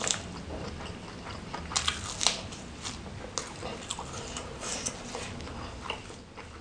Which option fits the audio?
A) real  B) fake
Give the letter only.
A